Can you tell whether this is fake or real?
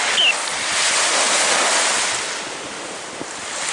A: real